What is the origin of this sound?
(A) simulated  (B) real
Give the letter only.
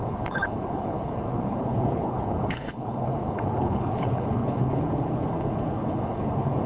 A